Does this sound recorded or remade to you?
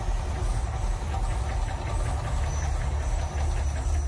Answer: recorded